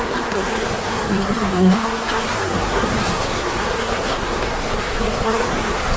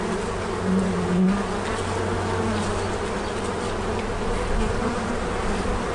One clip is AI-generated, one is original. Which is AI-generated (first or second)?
first